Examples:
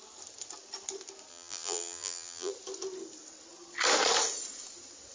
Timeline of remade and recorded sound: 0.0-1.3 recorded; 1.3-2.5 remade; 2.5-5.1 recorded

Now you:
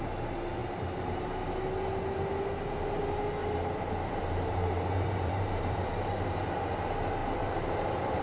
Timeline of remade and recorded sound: 0.0-3.4 recorded; 3.4-5.9 remade; 5.9-7.2 recorded; 7.2-8.2 remade